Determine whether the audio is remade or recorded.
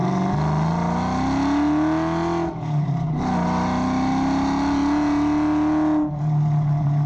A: recorded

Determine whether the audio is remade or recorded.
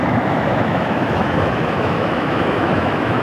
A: remade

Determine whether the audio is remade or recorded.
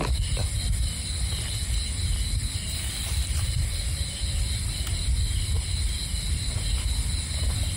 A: recorded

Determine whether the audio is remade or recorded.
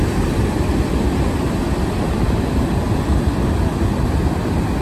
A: recorded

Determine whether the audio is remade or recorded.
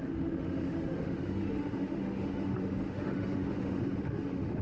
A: remade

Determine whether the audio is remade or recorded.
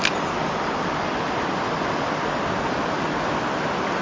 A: recorded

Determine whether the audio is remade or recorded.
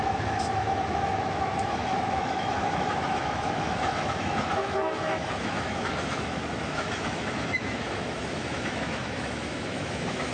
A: remade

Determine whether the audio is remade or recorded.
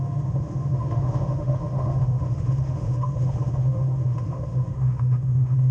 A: remade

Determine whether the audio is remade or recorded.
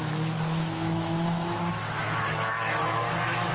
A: remade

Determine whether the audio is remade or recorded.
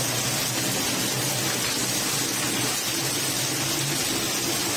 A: recorded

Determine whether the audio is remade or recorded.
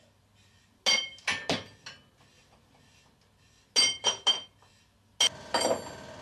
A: recorded